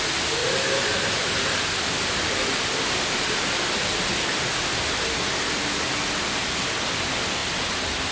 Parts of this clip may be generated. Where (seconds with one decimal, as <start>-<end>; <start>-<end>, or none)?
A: none